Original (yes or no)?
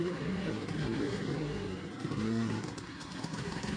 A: no